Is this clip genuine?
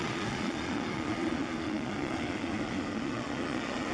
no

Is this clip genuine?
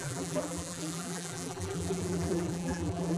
no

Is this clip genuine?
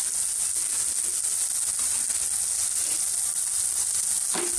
yes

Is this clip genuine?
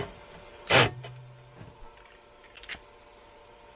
yes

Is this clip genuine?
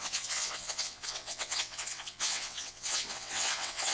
no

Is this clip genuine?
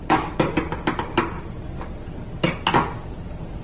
yes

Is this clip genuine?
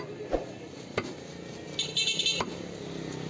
yes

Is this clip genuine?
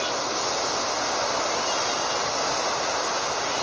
yes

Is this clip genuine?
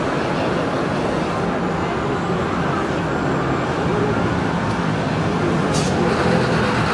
yes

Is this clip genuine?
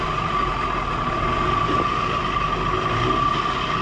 yes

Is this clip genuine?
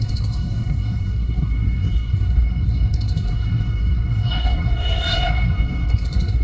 no